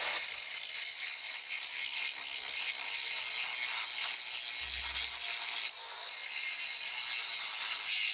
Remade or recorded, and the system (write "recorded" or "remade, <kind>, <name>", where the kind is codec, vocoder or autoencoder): recorded